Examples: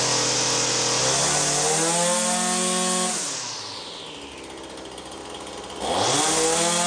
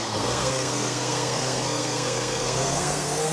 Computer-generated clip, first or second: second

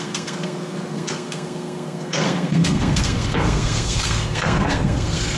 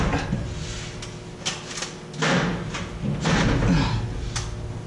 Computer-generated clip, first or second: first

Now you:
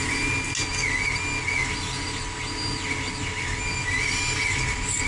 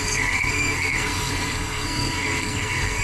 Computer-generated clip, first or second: second